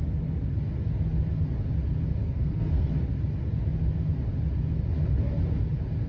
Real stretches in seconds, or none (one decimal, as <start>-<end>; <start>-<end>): 0.0-2.2; 2.9-6.1